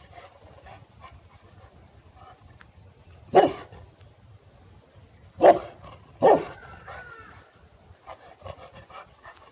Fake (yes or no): no